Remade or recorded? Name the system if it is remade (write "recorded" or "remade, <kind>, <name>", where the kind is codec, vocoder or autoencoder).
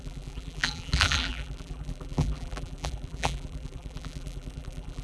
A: remade, vocoder, BigVGAN v2